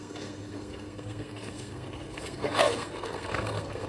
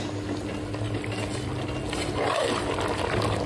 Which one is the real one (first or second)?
second